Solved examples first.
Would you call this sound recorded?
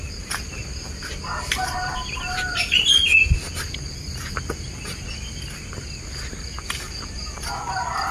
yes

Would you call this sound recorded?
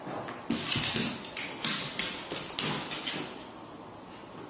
yes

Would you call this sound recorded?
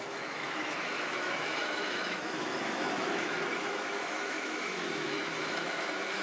no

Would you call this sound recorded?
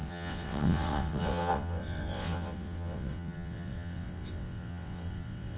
no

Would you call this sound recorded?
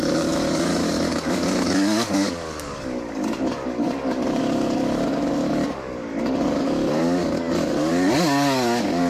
no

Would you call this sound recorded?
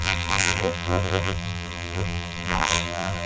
no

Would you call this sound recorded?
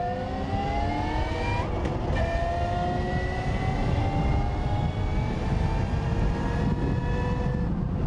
yes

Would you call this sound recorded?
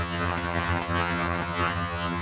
no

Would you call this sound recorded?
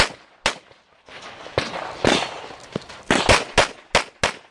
yes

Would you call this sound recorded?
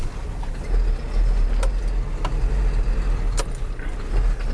yes